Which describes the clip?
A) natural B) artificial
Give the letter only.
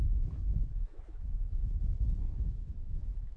B